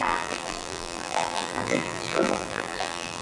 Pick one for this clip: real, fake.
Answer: fake